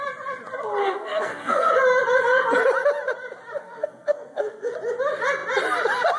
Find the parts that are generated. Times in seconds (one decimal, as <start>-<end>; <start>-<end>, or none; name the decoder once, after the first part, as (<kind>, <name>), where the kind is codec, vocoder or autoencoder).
0.8-1.7 (codec, SNAC); 3.6-4.7